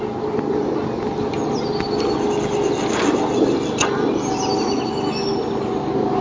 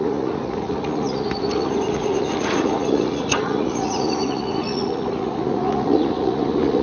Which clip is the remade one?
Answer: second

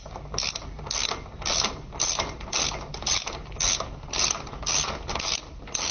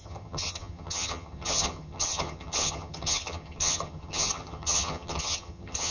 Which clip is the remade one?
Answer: second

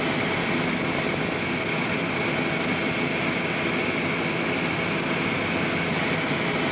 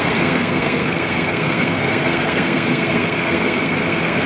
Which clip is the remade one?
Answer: second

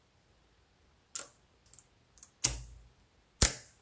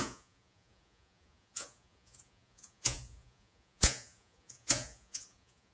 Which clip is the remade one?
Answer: second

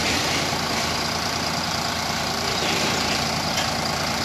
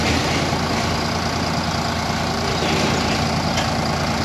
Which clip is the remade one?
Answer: first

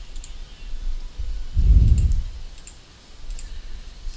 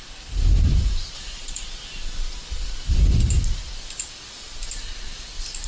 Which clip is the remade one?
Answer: second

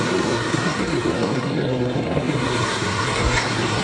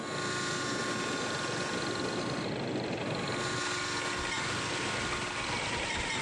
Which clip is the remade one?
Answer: first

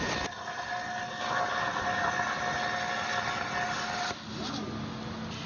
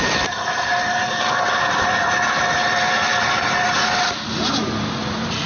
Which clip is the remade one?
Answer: second